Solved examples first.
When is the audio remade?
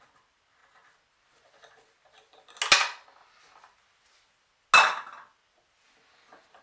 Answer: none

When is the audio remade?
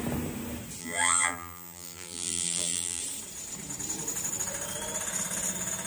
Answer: 0.8-3.0 (vocoder, BigVGAN v2)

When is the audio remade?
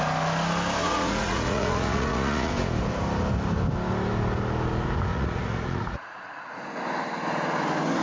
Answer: 0.8-2.5 (vocoder, Vocos); 5.1-6.8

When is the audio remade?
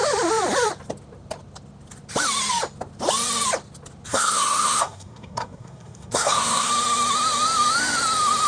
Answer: 4.1-6.7 (codec, SNAC)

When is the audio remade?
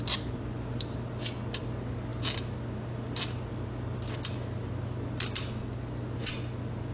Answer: none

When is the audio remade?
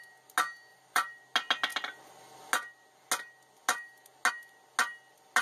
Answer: 0.7-1.2 (vocoder, BigVGAN v2)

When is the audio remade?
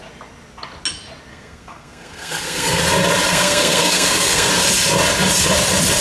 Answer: 1.3-2.8 (codec, SNAC); 3.3-4.5